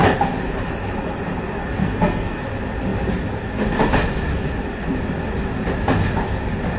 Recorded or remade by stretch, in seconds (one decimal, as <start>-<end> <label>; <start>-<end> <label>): 0.0-1.8 recorded; 1.8-2.4 remade; 2.4-6.8 recorded